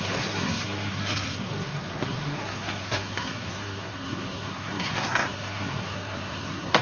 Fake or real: fake